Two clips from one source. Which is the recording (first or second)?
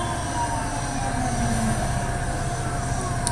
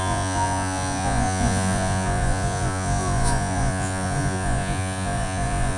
first